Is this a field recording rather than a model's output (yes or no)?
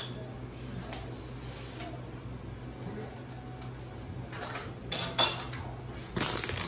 yes